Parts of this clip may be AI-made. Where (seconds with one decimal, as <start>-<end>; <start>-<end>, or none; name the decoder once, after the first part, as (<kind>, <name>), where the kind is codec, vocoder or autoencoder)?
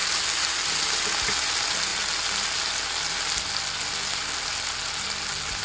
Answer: none